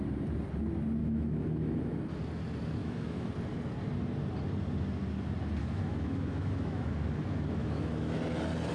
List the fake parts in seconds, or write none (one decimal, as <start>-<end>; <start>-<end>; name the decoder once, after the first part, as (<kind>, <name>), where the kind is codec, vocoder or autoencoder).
1.0-2.0 (autoencoder, DAC-VAE); 2.8-3.3; 5.6-6.9; 7.6-8.2

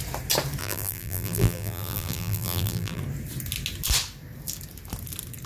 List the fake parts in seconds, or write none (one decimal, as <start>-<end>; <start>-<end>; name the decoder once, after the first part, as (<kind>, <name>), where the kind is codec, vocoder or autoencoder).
0.6-3.0 (vocoder, BigVGAN v2)

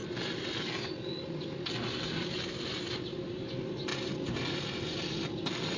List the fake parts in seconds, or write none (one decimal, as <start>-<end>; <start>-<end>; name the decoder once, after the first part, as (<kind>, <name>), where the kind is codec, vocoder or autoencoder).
none